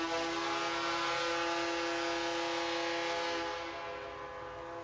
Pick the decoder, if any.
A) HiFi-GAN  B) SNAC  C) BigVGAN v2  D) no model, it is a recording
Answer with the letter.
D